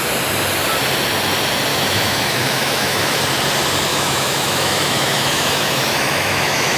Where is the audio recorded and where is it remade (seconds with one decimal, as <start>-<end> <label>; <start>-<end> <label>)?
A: 0.0-1.7 recorded; 1.7-3.2 remade; 3.2-3.9 recorded; 3.9-6.8 remade